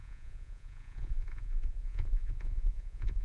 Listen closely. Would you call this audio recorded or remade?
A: remade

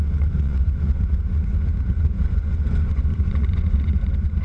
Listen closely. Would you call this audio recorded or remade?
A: remade